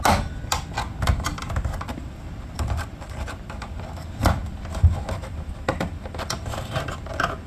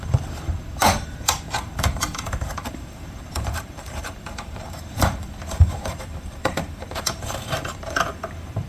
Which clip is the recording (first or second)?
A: first